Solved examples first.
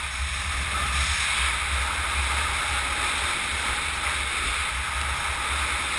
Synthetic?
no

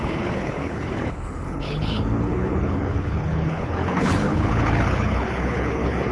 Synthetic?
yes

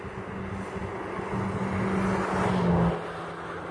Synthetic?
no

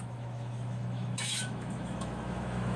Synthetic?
yes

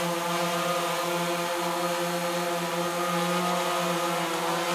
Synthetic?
no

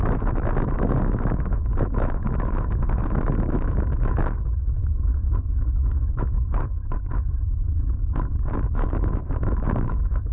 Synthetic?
yes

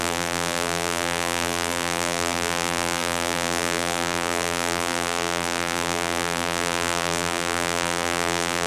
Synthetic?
yes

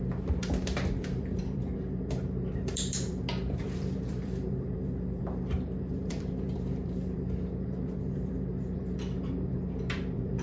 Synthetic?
yes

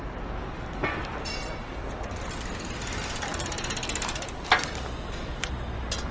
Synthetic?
no